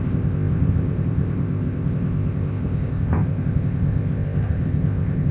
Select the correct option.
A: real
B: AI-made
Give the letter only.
B